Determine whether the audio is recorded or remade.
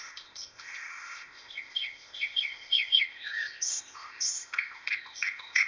remade